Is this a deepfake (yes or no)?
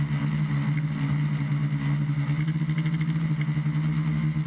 no